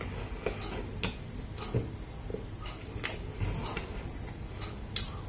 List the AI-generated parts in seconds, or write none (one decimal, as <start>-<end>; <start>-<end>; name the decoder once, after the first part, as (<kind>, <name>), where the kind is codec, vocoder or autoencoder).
none